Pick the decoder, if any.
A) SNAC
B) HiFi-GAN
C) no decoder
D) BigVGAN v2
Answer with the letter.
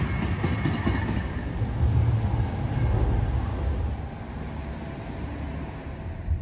C